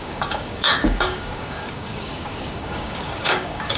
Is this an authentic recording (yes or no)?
no